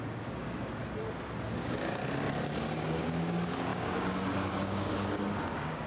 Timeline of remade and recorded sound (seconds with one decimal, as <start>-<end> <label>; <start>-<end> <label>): 0.0-0.8 remade; 0.8-1.5 recorded; 1.5-2.0 remade; 2.0-2.6 recorded; 2.6-5.9 remade